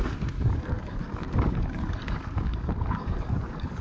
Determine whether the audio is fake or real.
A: fake